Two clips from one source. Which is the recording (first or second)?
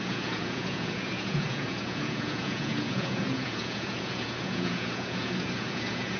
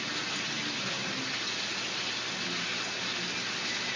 second